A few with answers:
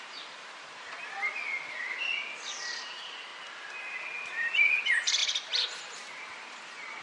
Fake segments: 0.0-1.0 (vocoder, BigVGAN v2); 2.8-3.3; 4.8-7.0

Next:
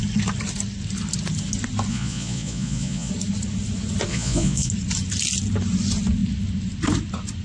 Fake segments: 1.9-3.1 (vocoder, Vocos); 4.1-4.7

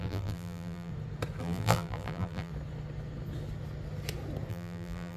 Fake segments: 0.0-0.9 (vocoder, BigVGAN v2); 1.4-2.5; 4.5-5.2

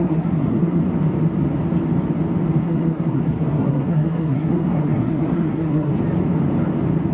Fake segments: 0.0-0.8 (codec, SNAC); 2.6-5.9

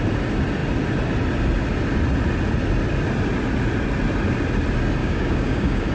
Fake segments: 5.0-5.9 (codec, DAC)

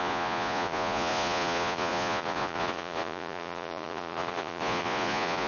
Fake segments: 0.0-5.5 (vocoder, Vocos)

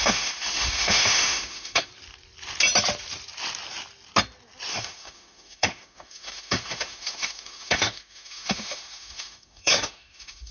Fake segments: 0.0-1.9 (autoencoder, DAC-VAE); 4.7-10.5